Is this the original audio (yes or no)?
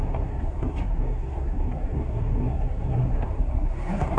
no